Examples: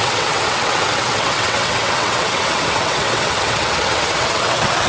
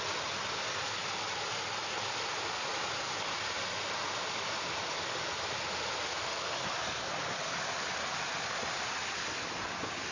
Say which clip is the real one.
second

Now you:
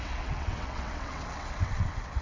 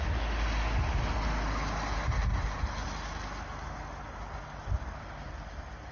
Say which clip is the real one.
second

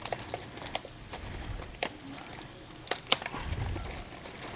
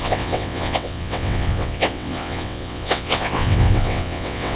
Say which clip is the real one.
first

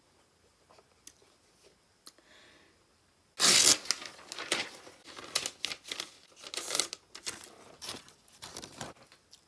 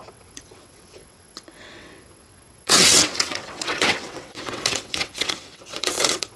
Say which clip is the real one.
first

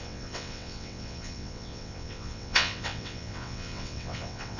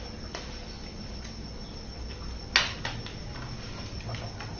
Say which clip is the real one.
second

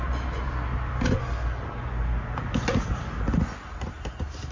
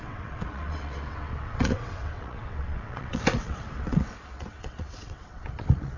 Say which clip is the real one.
first